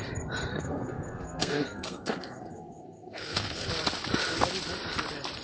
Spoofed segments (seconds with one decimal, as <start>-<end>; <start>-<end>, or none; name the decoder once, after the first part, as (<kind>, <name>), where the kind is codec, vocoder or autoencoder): 0.5-3.7 (codec, SNAC)